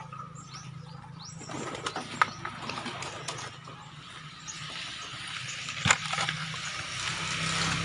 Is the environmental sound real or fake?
real